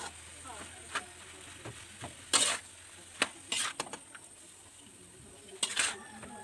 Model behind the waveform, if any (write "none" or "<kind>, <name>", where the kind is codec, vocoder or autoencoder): none